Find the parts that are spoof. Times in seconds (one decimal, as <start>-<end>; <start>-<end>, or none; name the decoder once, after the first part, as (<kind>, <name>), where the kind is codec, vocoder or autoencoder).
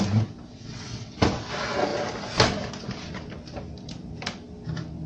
0.5-1.2 (vocoder, WaveNeXt)